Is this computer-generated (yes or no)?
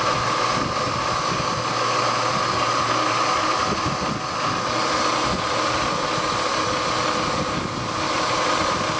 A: no